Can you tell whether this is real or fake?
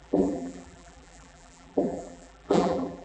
fake